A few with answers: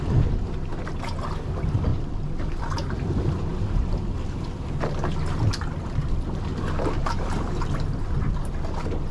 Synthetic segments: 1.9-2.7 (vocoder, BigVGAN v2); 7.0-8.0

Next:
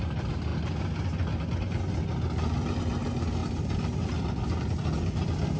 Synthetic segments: 3.4-4.2 (vocoder, BigVGAN v2)

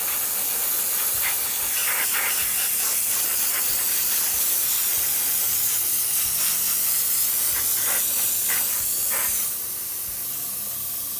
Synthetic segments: 1.8-2.3 (vocoder, BigVGAN v2)

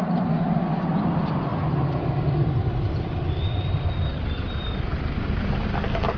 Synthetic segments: 0.0-1.5 (vocoder, BigVGAN v2); 2.9-4.9

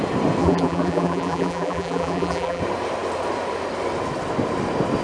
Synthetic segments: 0.4-2.6 (vocoder, BigVGAN v2)

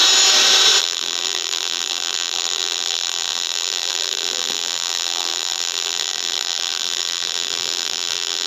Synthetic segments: 0.8-8.5 (vocoder, BigVGAN v2)